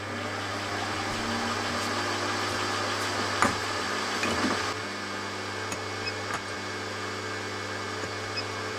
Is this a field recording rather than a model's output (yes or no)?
yes